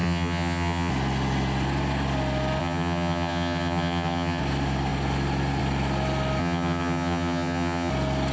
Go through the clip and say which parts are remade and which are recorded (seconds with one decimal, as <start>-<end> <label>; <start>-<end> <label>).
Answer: 0.0-0.9 remade; 0.9-2.6 recorded; 2.6-4.4 remade; 4.4-6.4 recorded; 6.4-7.9 remade; 7.9-8.3 recorded